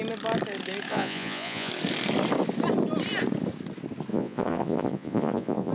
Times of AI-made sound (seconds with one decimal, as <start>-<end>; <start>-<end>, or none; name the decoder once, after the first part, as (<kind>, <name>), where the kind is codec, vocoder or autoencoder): 0.9-1.7 (vocoder, Vocos); 4.1-5.7